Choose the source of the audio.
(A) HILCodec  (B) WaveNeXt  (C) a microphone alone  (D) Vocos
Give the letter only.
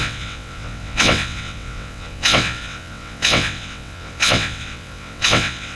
B